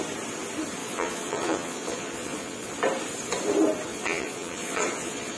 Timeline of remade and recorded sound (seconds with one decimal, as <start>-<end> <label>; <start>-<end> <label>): 0.0-0.8 recorded; 0.8-2.7 remade; 2.7-3.9 recorded; 3.9-5.4 remade